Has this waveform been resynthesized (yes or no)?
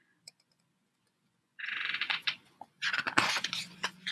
yes